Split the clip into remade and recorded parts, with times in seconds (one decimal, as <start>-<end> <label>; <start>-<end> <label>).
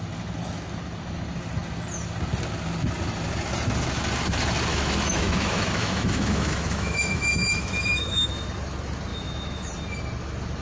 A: 0.0-4.7 recorded; 4.7-8.3 remade; 8.3-9.1 recorded; 9.1-9.7 remade; 9.7-10.6 recorded